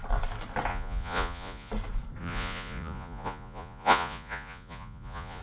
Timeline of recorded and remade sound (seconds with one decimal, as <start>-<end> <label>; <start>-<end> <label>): 0.0-0.7 recorded; 0.7-1.7 remade; 1.7-2.2 recorded; 2.2-5.4 remade